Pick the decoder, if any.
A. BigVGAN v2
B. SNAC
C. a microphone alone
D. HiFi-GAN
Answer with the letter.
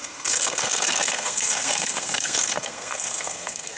B